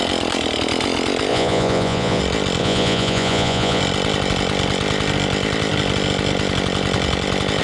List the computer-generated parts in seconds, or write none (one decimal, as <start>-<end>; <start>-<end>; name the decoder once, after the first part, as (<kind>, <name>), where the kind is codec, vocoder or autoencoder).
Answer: 1.3-2.2 (vocoder, Vocos); 2.6-3.8